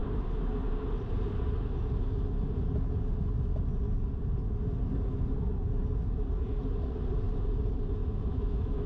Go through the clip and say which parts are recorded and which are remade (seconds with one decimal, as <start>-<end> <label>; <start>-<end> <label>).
0.0-8.0 recorded; 8.0-8.9 remade